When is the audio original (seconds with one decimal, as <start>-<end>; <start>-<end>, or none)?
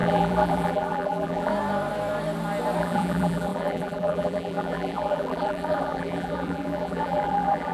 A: 1.5-2.8